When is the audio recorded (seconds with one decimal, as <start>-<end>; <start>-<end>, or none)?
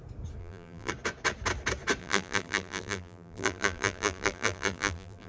0.0-0.4; 0.9-2.0